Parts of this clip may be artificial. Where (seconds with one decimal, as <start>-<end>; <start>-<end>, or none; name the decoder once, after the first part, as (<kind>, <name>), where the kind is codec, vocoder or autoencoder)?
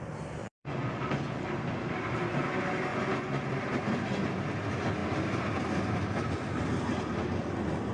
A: 0.4-1.4 (vocoder, Vocos); 2.9-3.5